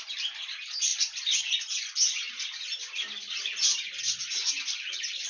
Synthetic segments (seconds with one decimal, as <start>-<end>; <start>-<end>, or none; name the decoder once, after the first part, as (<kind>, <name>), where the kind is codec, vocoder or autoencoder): none